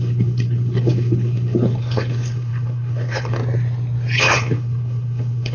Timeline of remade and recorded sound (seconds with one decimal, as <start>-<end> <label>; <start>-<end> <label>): 0.0-3.4 remade; 3.4-4.2 recorded; 4.2-5.5 remade